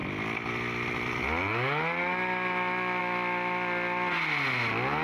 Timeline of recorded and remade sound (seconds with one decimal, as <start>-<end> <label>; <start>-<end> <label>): 0.0-5.0 recorded